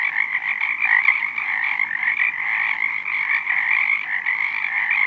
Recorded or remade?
recorded